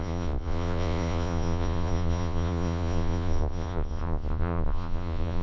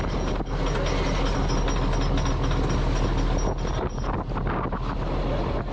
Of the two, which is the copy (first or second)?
first